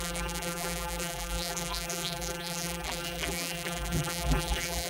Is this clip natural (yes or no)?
no